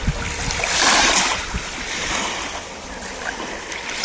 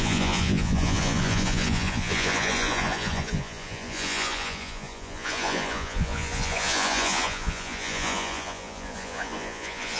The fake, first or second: second